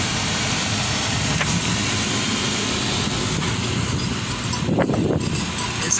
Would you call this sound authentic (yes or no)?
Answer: yes